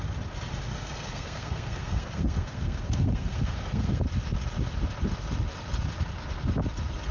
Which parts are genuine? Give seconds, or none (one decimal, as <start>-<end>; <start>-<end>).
0.0-0.7; 4.0-7.1